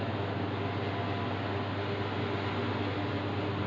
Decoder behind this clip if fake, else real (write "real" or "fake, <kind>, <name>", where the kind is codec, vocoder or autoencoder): real